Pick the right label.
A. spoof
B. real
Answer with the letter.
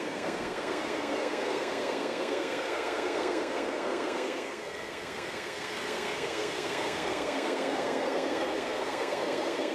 A